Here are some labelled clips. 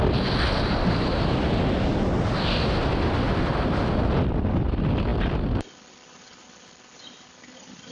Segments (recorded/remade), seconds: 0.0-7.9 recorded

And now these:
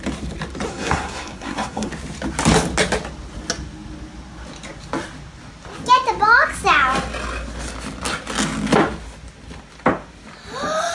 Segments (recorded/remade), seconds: 0.0-0.7 recorded; 0.7-1.9 remade; 1.9-10.9 recorded